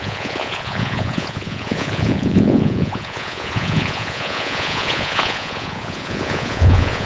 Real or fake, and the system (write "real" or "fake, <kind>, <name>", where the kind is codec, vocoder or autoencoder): fake, vocoder, Vocos